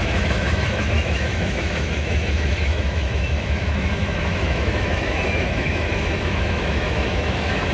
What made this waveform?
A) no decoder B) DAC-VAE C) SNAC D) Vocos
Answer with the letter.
B